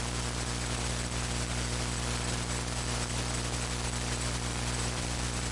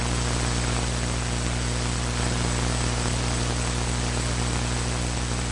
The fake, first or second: first